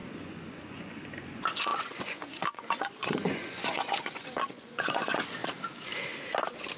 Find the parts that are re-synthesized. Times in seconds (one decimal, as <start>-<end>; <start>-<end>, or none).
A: 0.0-5.4